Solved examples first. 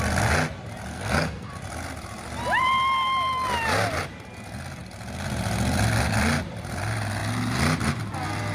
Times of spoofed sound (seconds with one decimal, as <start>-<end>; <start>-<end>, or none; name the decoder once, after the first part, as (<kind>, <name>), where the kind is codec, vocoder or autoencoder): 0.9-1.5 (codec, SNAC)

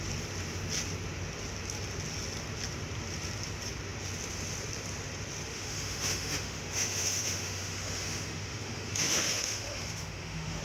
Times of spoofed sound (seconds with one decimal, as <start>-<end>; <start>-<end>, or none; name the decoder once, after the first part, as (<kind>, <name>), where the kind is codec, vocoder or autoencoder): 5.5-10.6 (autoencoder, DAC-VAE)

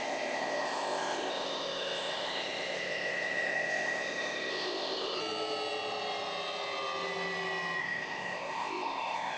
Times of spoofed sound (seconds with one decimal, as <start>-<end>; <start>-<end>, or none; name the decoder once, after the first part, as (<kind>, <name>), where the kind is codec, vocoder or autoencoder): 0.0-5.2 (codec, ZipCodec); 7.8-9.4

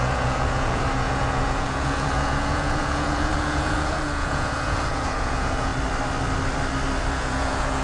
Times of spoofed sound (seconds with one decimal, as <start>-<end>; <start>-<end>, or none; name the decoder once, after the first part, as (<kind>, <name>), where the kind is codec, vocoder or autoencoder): 0.0-5.7 (vocoder, Vocos); 7.1-7.8